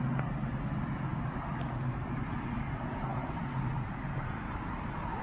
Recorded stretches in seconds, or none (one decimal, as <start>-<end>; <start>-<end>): 0.0-1.1; 2.3-3.1